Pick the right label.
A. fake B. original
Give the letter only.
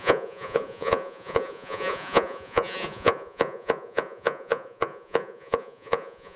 A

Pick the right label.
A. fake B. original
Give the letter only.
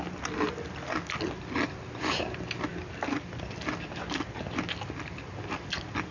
B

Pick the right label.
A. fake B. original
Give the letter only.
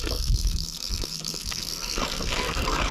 A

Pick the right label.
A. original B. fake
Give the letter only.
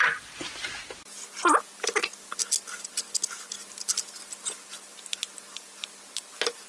A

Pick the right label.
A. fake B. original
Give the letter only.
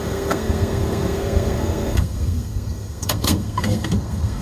A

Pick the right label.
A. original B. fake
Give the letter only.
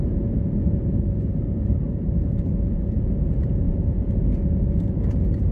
B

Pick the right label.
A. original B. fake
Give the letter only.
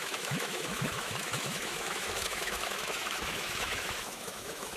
B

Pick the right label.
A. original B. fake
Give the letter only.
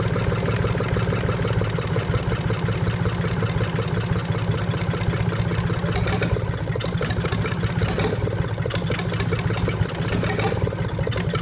A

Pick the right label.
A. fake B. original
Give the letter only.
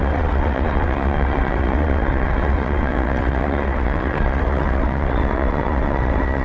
A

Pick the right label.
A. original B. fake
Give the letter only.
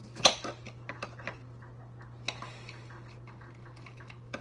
A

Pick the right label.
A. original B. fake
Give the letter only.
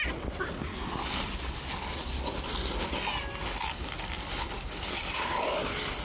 A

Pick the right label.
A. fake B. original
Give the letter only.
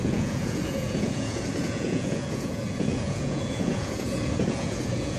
A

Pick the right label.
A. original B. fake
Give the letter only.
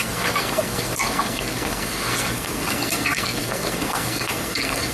B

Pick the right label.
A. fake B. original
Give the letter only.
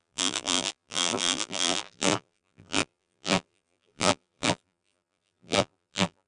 A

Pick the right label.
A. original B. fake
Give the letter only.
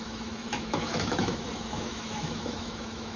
B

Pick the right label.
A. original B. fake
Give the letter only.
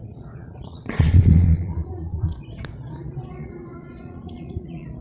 B